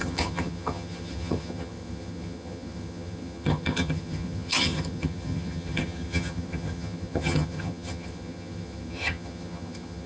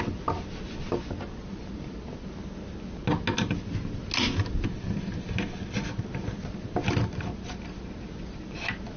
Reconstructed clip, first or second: first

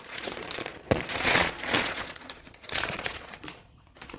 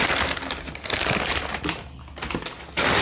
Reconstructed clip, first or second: first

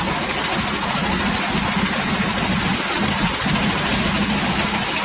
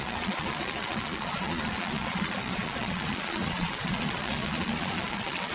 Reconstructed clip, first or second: second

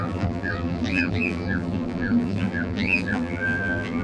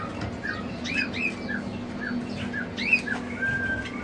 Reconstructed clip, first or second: first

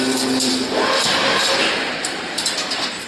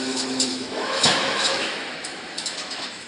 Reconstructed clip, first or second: second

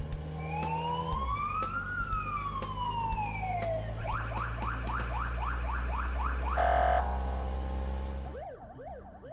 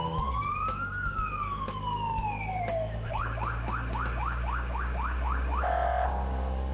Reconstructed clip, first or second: second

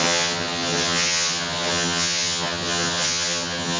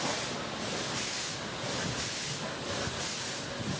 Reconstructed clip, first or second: first